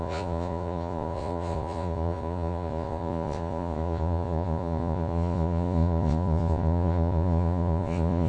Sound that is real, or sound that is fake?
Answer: fake